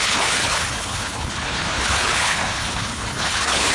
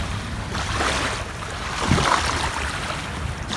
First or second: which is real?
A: second